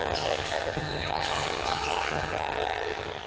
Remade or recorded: remade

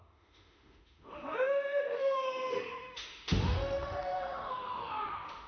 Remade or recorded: remade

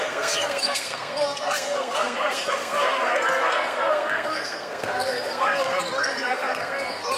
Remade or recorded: remade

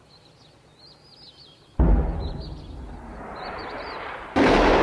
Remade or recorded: recorded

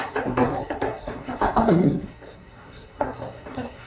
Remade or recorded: remade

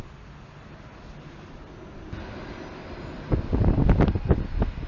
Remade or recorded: recorded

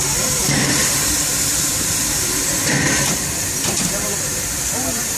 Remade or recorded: remade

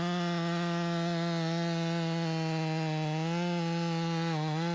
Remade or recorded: recorded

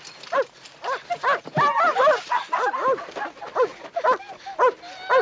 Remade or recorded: recorded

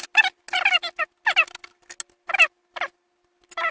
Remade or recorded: recorded